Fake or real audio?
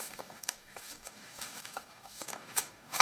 fake